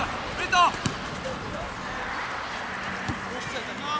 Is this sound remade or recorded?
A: recorded